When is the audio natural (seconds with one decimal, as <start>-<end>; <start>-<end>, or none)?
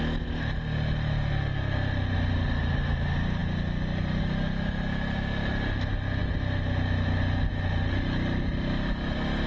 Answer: 0.0-9.5